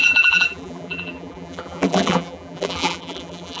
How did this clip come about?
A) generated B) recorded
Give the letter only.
A